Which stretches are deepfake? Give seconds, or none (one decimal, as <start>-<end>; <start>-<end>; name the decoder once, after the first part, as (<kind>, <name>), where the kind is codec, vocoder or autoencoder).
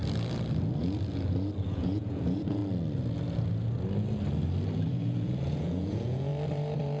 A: 1.6-2.6 (vocoder, Vocos); 4.9-6.3